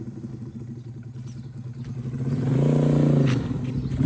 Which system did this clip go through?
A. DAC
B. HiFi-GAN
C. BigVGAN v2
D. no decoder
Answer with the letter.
D